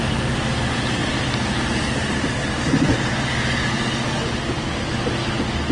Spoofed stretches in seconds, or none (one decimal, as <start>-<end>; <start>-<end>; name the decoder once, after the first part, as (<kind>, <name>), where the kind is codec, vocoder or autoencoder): none